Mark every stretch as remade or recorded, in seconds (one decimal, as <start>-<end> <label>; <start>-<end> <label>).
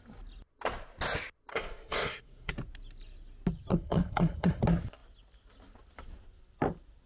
0.0-1.5 recorded; 1.5-2.5 remade; 2.5-3.7 recorded; 3.7-4.6 remade; 4.6-7.1 recorded